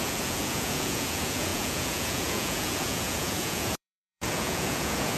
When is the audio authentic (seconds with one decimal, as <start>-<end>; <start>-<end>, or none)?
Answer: none